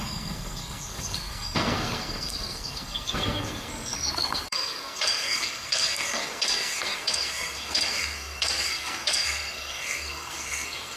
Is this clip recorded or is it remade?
remade